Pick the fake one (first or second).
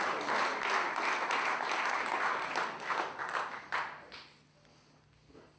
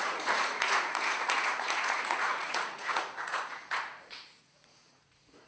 second